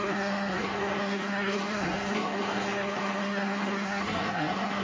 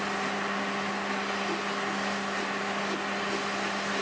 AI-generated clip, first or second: first